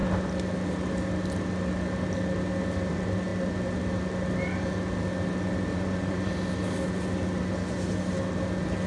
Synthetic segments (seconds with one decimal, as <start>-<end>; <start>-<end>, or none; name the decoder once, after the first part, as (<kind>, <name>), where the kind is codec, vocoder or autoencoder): 5.7-6.3 (vocoder, Vocos)